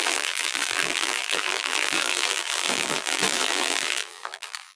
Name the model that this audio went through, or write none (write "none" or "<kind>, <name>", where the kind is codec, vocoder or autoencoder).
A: vocoder, BigVGAN v2